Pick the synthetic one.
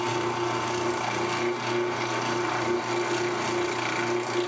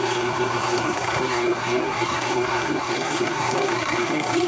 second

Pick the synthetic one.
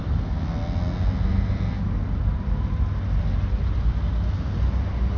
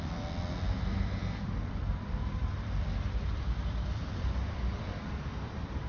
second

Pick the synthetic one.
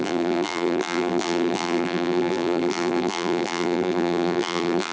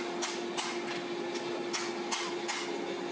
first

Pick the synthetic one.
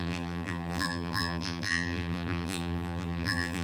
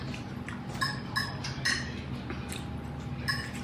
first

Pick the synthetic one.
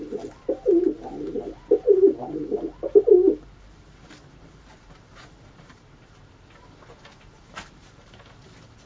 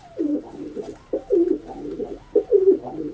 second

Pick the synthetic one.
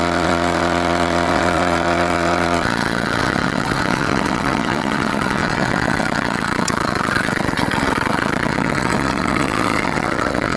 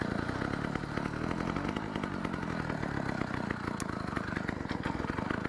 first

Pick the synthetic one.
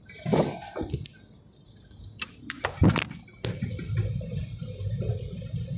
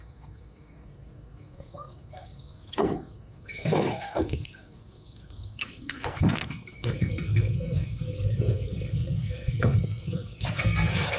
second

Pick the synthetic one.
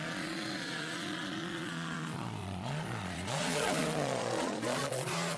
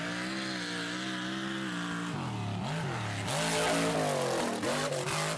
first